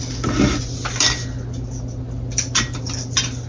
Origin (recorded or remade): recorded